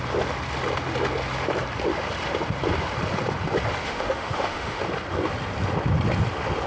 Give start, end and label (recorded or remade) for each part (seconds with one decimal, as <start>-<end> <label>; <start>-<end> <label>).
0.0-3.8 recorded; 3.8-4.8 remade; 4.8-6.7 recorded